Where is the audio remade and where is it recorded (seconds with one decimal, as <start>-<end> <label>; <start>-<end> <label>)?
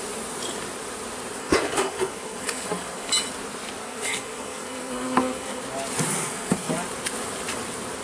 0.0-1.4 recorded; 1.4-3.1 remade; 3.1-3.8 recorded; 3.8-5.6 remade; 5.6-6.1 recorded; 6.1-6.7 remade; 6.7-8.0 recorded